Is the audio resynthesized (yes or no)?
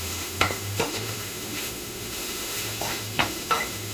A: yes